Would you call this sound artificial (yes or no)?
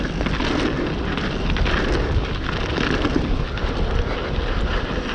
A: no